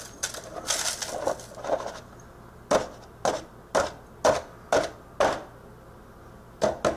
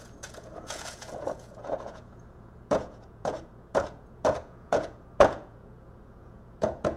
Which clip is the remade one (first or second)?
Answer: second